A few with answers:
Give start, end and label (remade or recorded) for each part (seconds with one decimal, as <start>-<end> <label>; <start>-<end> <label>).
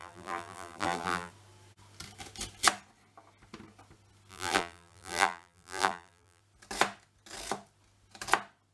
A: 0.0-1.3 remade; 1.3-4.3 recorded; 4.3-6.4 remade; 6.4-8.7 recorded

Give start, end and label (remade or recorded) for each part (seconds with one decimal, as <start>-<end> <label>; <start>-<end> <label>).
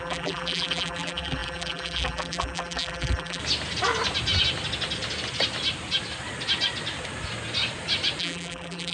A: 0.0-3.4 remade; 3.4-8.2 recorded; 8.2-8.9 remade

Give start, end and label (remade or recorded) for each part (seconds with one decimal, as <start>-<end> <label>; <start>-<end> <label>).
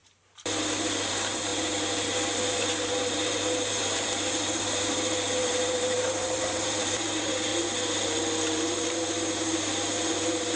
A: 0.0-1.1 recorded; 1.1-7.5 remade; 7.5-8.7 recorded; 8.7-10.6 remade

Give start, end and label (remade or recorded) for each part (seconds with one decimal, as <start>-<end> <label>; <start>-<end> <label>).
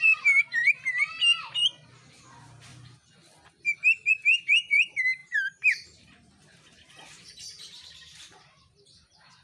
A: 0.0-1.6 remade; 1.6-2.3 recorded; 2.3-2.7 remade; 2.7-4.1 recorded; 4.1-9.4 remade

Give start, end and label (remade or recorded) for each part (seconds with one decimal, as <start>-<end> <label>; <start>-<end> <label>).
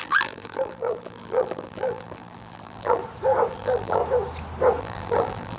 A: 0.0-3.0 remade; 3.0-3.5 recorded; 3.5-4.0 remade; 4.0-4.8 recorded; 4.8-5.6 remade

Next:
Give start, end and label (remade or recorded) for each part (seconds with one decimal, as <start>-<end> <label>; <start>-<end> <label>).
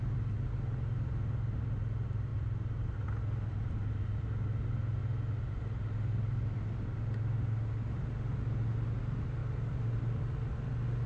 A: 0.0-2.3 recorded; 2.3-4.3 remade; 4.3-9.4 recorded; 9.4-10.2 remade; 10.2-11.1 recorded